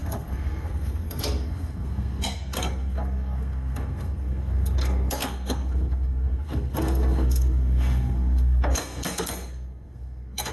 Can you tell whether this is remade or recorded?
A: remade